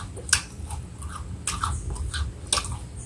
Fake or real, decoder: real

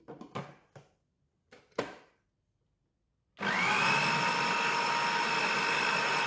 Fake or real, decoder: real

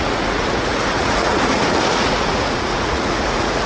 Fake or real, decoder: fake, vocoder, Vocos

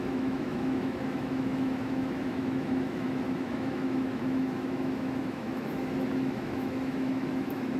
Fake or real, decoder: fake, autoencoder, DAC-VAE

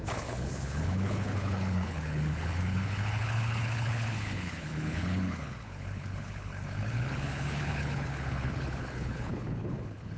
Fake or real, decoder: fake, codec, HILCodec